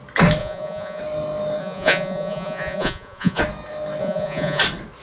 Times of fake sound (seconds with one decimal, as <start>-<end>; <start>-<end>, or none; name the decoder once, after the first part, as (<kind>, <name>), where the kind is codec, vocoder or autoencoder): 0.4-1.0 (vocoder, Vocos); 1.6-3.4; 4.0-4.6